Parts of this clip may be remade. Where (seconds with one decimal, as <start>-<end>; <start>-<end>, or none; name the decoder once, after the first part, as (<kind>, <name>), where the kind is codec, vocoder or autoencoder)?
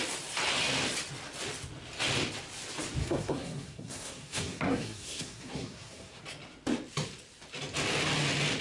3.0-6.2 (codec, SNAC)